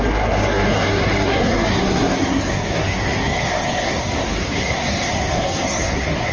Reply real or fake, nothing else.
fake